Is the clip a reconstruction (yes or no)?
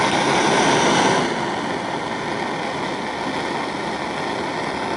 no